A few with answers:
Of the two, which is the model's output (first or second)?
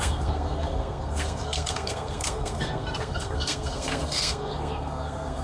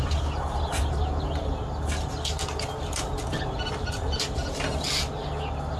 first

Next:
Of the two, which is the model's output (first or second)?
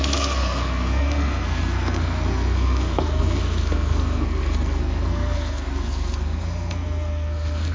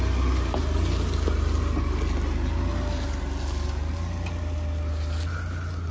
first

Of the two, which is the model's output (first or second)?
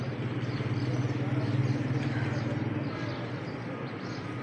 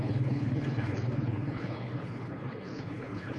second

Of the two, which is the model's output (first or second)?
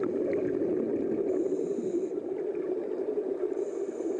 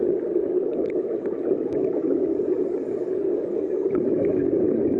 second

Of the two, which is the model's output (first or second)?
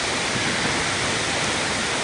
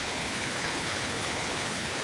second